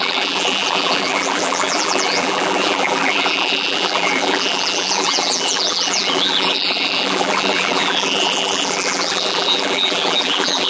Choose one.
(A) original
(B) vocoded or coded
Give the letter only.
B